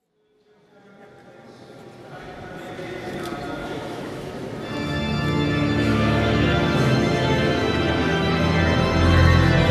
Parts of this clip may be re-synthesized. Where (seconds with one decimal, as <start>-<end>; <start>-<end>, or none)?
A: 3.6-4.3; 5.9-8.3